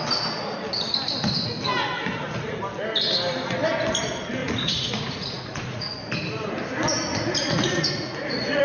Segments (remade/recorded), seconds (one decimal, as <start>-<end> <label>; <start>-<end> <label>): 0.0-2.0 recorded; 2.0-2.6 remade; 2.6-4.4 recorded; 4.4-5.9 remade; 5.9-7.1 recorded; 7.1-8.6 remade